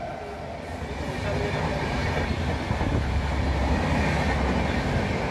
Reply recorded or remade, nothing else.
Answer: recorded